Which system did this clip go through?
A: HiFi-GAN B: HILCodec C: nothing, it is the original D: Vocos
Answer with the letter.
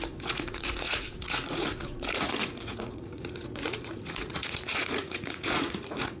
D